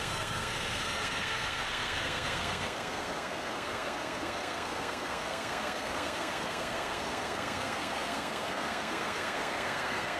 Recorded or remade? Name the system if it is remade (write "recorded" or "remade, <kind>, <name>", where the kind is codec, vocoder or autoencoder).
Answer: remade, codec, SNAC